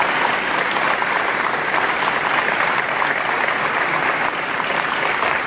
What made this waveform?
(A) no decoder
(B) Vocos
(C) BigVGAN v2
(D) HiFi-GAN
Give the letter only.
A